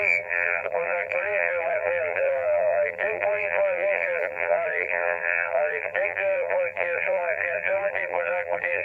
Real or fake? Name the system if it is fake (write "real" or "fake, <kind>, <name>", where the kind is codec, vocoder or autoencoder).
fake, vocoder, BigVGAN v2